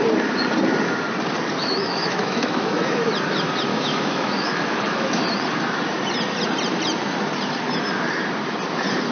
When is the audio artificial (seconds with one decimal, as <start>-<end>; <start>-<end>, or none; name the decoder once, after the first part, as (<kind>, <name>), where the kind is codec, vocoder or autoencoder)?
1.6-3.1 (autoencoder, DAC-VAE); 3.7-5.2